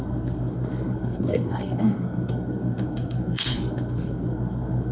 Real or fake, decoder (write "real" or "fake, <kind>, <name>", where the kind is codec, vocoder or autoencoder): fake, codec, SNAC